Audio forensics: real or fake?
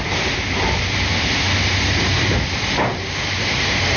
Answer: real